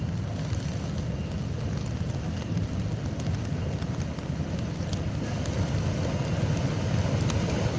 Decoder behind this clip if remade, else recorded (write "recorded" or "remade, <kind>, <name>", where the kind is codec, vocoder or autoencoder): recorded